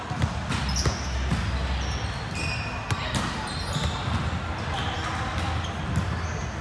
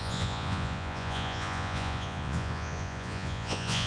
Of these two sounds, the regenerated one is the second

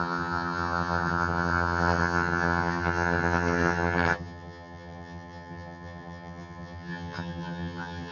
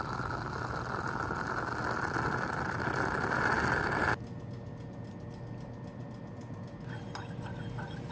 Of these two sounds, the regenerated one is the first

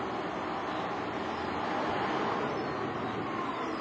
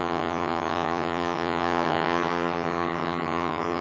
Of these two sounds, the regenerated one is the second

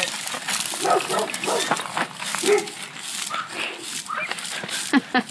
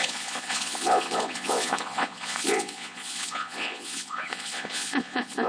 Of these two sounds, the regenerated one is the second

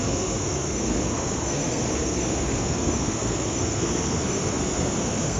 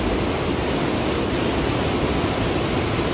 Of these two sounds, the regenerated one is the first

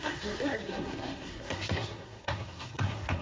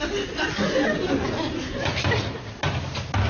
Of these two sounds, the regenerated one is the first